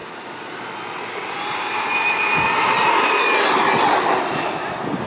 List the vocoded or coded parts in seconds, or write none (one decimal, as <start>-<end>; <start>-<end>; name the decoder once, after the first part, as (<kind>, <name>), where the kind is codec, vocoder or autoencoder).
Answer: none